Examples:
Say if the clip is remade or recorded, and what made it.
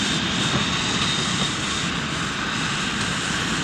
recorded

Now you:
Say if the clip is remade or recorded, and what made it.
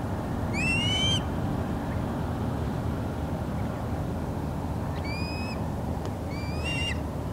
recorded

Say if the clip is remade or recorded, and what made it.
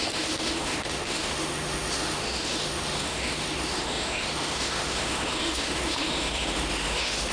remade, autoencoder, DAC-VAE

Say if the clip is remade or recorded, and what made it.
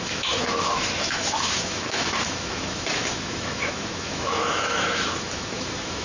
remade, autoencoder, DAC-VAE